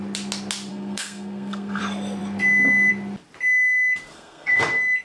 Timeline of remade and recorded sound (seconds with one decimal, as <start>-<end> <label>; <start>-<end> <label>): 0.0-0.7 recorded; 0.7-1.8 remade; 1.8-4.1 recorded; 4.1-4.6 remade; 4.6-5.0 recorded